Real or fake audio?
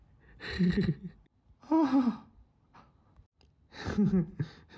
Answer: real